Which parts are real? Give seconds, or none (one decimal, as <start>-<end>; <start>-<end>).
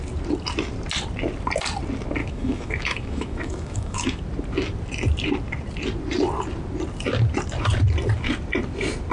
0.0-2.2; 4.2-9.1